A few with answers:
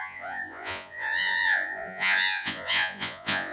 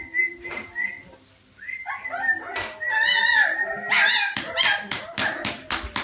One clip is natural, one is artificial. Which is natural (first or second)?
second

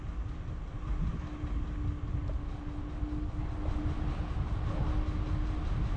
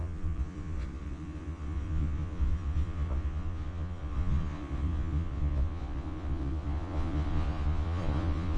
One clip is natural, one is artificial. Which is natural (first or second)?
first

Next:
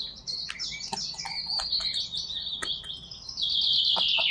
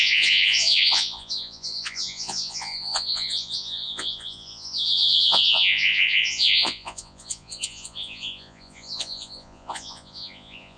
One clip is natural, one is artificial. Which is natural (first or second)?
first